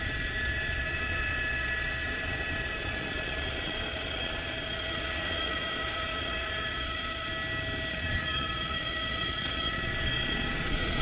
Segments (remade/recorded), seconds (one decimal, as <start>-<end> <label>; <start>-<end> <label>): 0.0-7.3 remade; 7.3-7.9 recorded; 7.9-11.0 remade